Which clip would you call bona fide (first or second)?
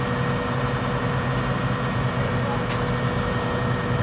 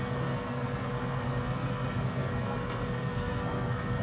first